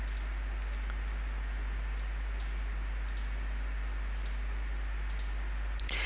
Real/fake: real